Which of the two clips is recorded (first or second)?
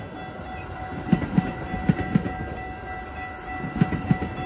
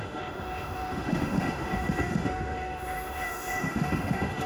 first